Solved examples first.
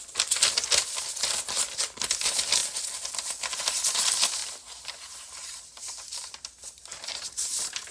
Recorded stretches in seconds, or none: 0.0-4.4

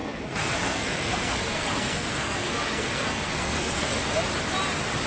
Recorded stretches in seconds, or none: 4.0-5.1

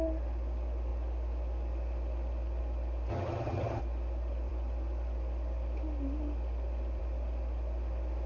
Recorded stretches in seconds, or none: 0.0-3.1; 3.8-8.3

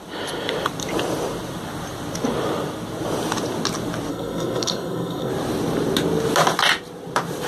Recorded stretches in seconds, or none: 0.0-4.1; 5.3-7.5

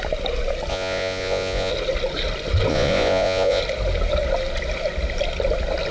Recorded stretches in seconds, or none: 0.0-0.7; 1.7-2.7; 3.6-5.9